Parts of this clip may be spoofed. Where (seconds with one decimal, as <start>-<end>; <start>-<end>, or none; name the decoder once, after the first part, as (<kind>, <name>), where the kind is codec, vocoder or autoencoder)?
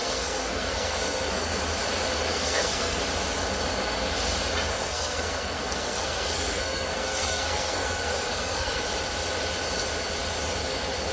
0.0-1.5 (codec, SNAC); 2.3-3.0; 4.7-8.8